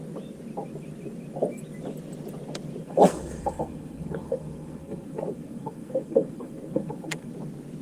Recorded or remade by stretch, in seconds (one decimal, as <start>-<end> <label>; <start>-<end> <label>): 0.0-2.8 recorded; 2.8-7.3 remade; 7.3-7.8 recorded